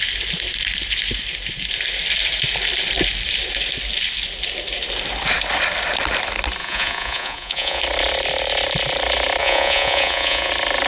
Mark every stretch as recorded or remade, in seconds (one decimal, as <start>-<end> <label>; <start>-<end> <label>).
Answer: 0.0-6.6 recorded; 6.6-7.8 remade; 7.8-9.4 recorded; 9.4-10.5 remade; 10.5-10.9 recorded